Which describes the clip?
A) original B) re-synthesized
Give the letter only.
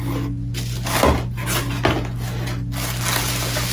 A